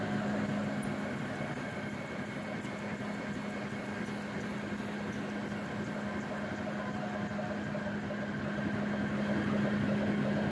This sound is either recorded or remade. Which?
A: recorded